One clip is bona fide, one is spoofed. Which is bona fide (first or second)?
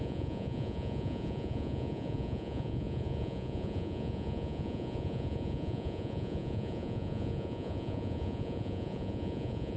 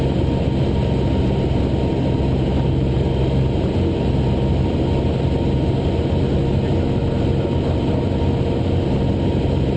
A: second